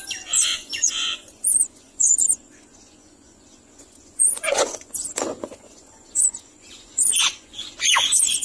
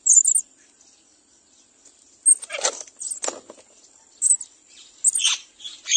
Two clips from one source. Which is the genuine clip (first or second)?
second